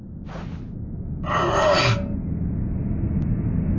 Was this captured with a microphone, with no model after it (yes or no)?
yes